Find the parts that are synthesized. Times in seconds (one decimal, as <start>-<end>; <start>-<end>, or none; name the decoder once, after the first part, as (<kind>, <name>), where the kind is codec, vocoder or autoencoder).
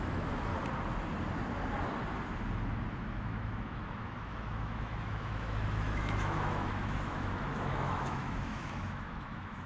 0.0-0.5 (autoencoder, DAC-VAE); 2.9-9.7